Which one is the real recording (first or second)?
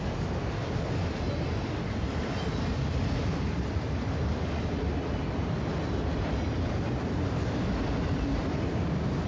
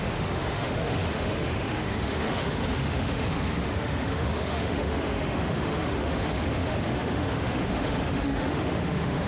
first